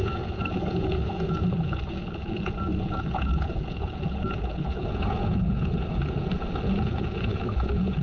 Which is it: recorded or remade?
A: remade